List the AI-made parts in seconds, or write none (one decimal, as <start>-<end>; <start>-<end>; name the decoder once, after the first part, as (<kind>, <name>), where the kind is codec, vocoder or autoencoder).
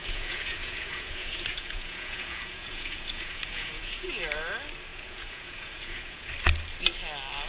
0.0-4.1 (vocoder, Vocos); 4.9-6.3